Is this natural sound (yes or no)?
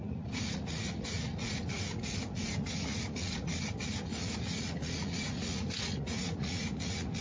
no